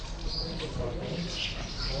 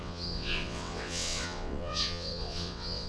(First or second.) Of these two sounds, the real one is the first